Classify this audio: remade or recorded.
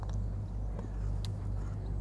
recorded